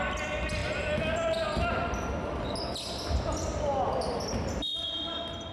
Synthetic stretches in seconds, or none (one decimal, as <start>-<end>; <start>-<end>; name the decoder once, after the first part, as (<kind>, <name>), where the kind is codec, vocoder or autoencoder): none